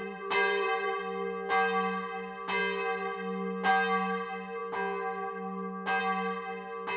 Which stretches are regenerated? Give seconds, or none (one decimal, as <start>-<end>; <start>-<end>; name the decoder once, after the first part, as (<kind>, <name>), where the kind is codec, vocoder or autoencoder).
0.0-1.0 (vocoder, BigVGAN v2)